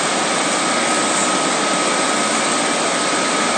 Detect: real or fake real